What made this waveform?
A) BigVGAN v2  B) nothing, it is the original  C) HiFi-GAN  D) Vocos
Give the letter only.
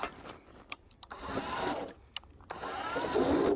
B